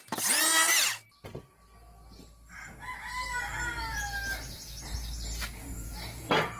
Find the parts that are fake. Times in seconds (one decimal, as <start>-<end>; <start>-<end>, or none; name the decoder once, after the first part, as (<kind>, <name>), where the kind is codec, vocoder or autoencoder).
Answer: 5.6-6.6 (vocoder, Vocos)